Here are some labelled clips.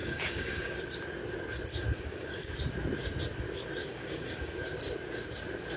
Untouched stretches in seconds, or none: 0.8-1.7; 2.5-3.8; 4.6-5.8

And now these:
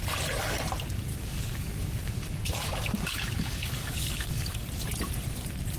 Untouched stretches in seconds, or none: 0.0-1.1; 4.6-5.8

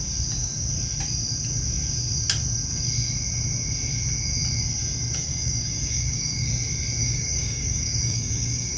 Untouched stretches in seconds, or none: 0.0-5.2; 6.5-7.0